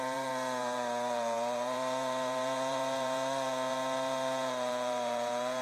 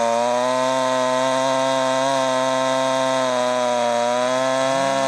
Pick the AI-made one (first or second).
first